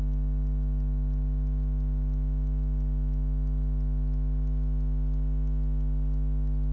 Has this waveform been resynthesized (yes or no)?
no